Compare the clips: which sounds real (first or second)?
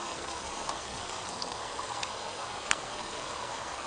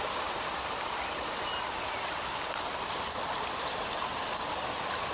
second